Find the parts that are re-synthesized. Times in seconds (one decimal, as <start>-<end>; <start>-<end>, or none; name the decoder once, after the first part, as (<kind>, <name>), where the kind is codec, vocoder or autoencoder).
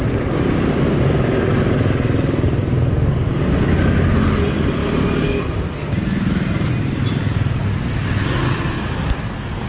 4.8-5.4 (codec, DAC)